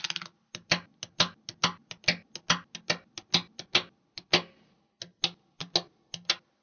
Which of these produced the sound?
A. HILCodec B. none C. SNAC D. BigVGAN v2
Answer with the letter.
B